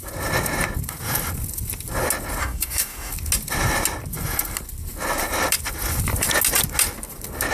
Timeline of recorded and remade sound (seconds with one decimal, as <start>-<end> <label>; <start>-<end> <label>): 0.0-2.4 recorded; 2.4-3.1 remade; 3.1-7.5 recorded